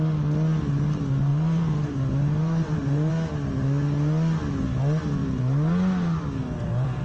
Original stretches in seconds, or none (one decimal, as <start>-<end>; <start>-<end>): 0.0-1.3; 3.1-7.0

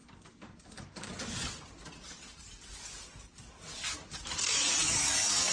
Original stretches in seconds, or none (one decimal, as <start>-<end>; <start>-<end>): 1.1-2.7; 4.7-5.5

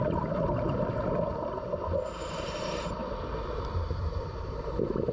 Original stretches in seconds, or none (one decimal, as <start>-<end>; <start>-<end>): 3.0-3.7

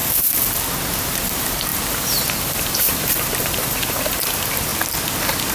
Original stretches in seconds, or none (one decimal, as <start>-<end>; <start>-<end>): 0.0-0.9; 4.7-5.5

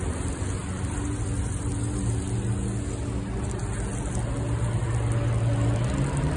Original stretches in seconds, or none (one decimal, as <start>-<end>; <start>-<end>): 0.0-0.6; 1.7-6.4

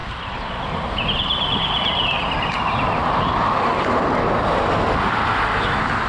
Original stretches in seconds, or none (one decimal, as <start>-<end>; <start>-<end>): 3.7-6.1

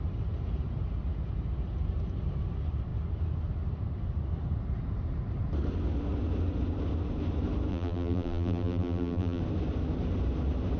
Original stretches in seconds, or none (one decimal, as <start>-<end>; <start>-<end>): 0.0-7.7; 9.4-10.8